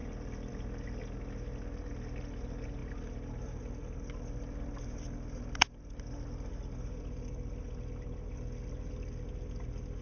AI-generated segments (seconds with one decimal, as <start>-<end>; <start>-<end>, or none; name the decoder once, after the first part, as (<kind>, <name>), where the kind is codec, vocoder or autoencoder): none